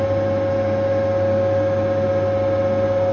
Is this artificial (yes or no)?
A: no